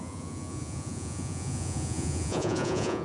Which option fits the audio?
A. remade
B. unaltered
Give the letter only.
A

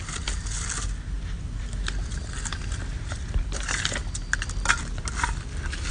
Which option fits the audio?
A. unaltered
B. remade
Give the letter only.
A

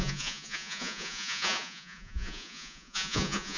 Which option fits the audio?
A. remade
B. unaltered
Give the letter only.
A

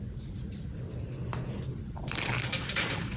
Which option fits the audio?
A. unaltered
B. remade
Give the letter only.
A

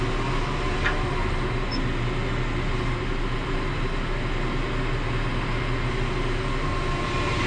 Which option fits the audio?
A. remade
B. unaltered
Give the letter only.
B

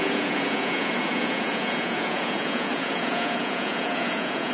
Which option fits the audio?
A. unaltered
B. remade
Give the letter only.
B